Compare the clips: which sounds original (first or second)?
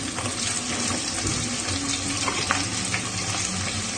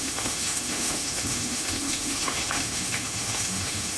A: first